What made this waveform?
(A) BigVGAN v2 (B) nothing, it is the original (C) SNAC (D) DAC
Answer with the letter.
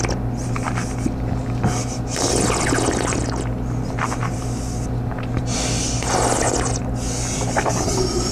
B